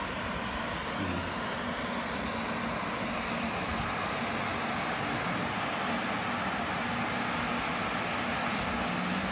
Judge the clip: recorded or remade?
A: recorded